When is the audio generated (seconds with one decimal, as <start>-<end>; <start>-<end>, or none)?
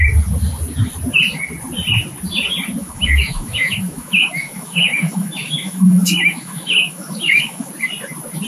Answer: 2.8-7.7